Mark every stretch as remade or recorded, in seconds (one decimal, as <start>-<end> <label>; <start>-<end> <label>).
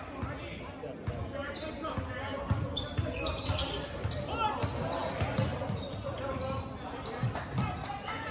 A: 0.0-8.3 recorded